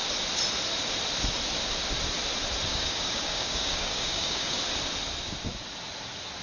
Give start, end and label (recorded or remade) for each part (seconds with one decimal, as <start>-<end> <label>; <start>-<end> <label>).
0.0-2.7 recorded; 2.7-4.6 remade; 4.6-6.4 recorded